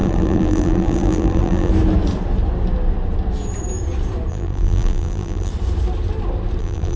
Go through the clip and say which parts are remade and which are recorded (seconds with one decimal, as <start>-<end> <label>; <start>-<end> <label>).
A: 0.0-1.7 remade; 1.7-4.3 recorded; 4.3-5.5 remade; 5.5-6.6 recorded; 6.6-7.0 remade